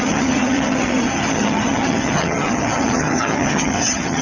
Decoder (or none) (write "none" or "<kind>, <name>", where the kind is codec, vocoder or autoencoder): vocoder, HiFi-GAN